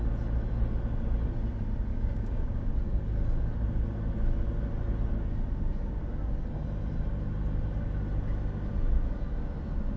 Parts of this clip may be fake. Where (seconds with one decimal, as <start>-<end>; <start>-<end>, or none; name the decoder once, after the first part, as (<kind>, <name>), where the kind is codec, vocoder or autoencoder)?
1.9-2.7 (codec, DAC)